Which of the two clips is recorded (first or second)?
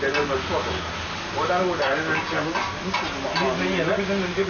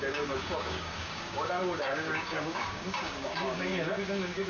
first